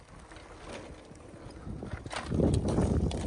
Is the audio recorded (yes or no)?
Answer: yes